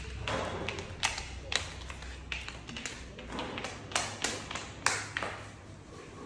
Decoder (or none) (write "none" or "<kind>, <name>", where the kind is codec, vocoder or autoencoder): none